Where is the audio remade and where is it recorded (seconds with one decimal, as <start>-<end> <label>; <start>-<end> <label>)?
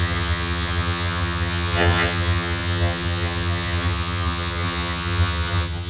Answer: 0.0-5.9 remade